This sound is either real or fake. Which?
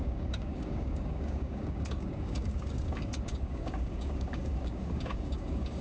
fake